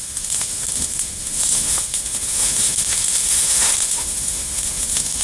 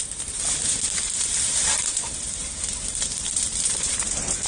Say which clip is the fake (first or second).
first